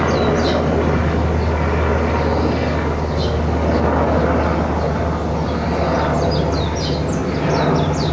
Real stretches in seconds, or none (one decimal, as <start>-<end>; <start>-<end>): 0.0-8.1